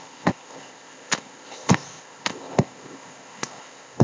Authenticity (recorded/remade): remade